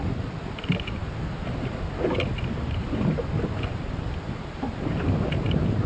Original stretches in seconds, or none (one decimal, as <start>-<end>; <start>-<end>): 0.0-5.9